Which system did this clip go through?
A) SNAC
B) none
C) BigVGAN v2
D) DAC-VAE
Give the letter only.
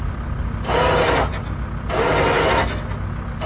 B